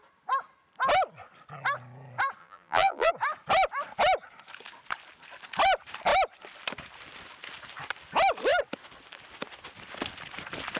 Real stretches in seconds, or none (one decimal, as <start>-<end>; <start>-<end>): 0.0-2.4; 3.1-10.8